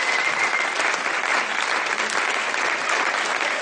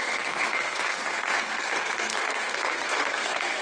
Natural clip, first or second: first